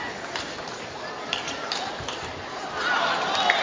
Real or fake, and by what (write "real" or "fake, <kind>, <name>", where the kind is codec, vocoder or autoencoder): real